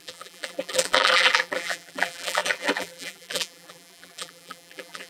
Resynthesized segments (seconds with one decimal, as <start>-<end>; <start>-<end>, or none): 0.0-5.1